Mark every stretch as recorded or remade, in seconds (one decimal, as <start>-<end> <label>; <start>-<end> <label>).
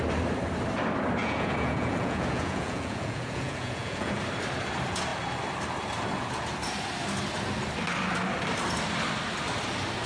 0.0-1.2 recorded; 1.2-4.2 remade; 4.2-10.1 recorded